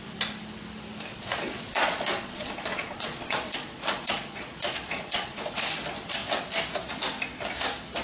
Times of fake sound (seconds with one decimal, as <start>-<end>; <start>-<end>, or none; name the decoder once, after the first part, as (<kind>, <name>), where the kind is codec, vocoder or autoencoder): 1.1-5.4 (vocoder, Vocos)